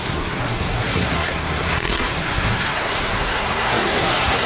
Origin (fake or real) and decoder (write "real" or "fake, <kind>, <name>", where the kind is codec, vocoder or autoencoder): fake, codec, SNAC